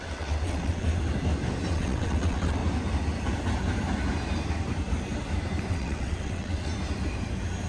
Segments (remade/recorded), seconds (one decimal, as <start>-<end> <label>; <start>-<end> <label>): 0.0-0.9 remade; 0.9-1.7 recorded; 1.7-2.6 remade; 2.6-5.7 recorded; 5.7-6.7 remade; 6.7-7.7 recorded